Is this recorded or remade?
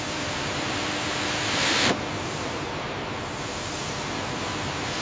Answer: recorded